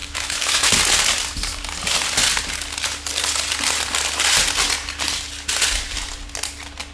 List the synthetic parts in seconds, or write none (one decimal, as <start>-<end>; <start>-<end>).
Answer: 0.0-0.7